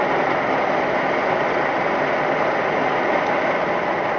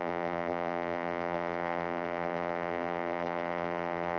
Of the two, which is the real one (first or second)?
first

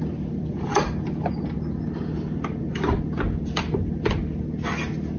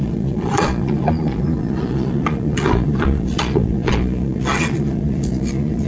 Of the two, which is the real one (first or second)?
first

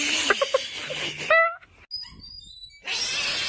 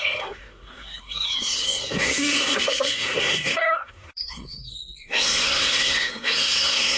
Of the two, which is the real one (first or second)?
first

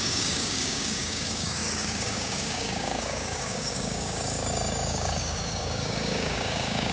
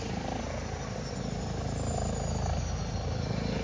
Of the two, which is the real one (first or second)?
second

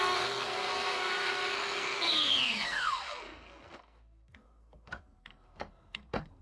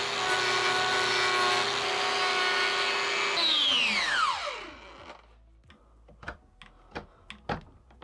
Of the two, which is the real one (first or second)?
second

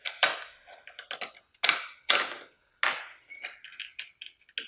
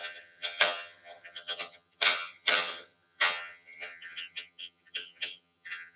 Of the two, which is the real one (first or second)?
first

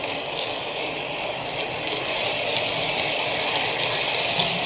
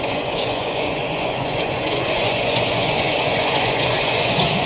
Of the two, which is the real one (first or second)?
first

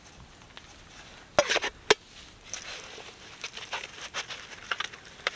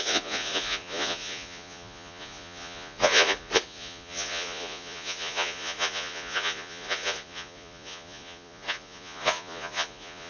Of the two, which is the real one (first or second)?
first